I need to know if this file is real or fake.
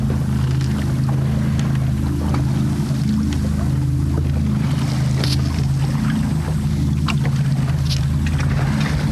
real